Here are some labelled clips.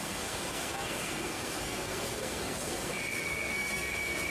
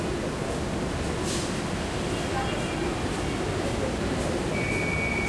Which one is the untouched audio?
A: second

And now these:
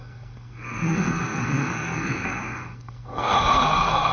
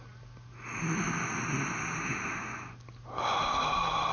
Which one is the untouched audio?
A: second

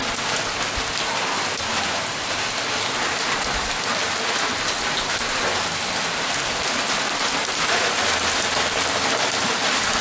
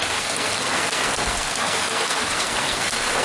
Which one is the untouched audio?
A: first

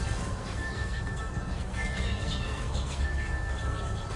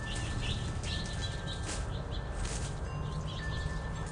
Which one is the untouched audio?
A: second